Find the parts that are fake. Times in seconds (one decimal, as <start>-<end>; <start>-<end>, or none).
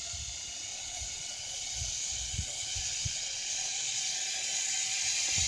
0.7-4.0